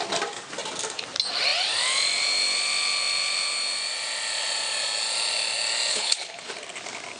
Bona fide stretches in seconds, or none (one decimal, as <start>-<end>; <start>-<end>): 0.0-5.9; 6.5-7.2